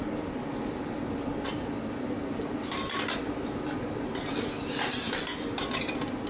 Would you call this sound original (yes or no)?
yes